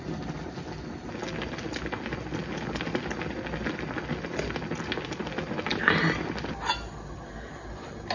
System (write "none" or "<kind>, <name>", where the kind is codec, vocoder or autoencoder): none